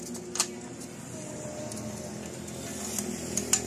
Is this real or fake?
real